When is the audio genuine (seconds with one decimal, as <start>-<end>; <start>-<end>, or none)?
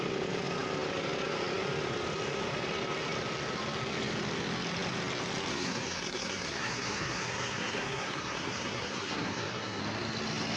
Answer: 0.0-5.5; 9.8-10.6